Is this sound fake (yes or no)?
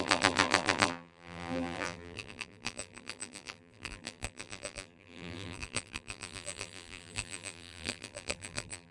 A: yes